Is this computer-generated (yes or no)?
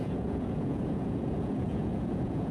yes